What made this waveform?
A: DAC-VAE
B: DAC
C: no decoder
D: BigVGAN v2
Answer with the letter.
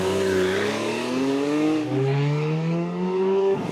B